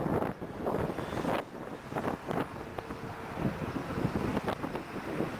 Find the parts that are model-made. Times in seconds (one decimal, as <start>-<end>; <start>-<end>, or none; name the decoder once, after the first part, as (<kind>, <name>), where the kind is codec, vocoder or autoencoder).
none

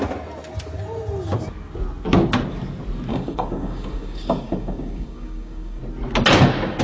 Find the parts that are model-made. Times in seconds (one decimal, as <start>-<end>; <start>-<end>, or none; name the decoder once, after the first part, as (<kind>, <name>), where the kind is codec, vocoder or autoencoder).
3.1-5.8 (codec, DAC)

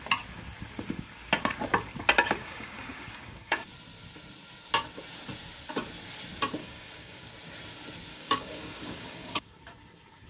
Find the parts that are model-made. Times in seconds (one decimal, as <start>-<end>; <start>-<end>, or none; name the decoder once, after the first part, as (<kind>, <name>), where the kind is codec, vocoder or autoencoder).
2.4-3.7 (codec, DAC); 6.6-7.3; 8.1-9.6

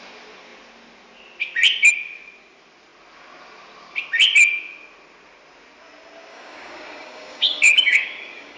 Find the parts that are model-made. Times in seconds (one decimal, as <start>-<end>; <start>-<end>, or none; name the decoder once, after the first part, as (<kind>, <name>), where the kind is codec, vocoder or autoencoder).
6.3-8.6 (codec, DAC)

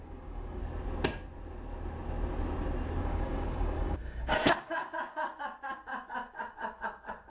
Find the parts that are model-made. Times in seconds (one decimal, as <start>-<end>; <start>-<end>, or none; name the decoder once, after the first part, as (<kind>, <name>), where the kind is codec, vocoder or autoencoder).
0.0-0.6 (codec, DAC); 3.0-7.3

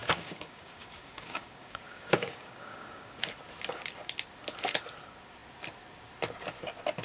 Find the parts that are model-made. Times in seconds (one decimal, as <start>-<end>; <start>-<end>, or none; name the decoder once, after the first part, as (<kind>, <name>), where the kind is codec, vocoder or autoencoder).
0.0-3.3 (codec, DAC)

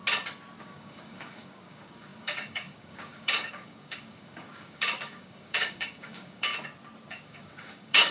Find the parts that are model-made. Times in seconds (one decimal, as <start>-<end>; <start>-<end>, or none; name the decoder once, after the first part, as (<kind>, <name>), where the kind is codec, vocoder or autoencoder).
0.6-6.5 (codec, DAC); 7.1-8.1

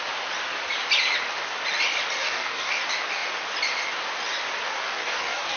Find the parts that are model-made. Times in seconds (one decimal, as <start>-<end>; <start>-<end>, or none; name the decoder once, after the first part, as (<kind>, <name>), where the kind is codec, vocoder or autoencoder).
2.2-2.7 (codec, DAC); 4.7-5.6